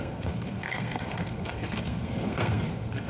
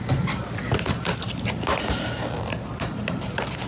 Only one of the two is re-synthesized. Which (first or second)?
first